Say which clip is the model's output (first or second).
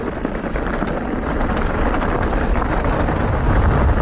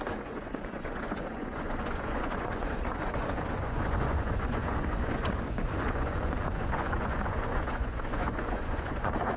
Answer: second